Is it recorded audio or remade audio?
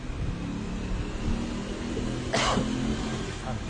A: recorded